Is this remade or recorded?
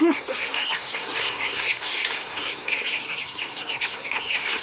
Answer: remade